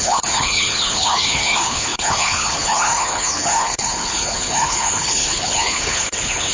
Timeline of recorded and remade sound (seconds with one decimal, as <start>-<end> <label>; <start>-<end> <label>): 0.0-6.5 remade